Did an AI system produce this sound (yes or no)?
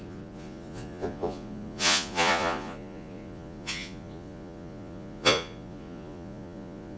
yes